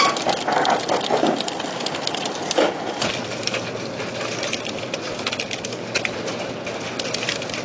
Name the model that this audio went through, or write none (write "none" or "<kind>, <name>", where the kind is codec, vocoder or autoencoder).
none